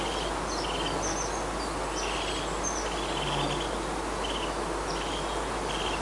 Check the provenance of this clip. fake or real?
real